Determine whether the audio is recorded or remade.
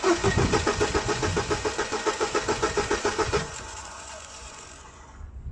remade